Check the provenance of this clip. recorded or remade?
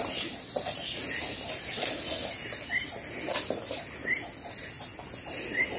recorded